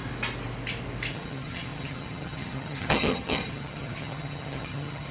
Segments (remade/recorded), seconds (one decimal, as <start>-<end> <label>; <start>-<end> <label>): 0.0-1.1 recorded; 1.1-5.1 remade